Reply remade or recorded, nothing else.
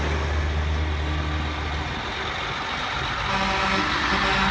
recorded